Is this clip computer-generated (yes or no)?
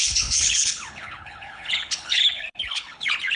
yes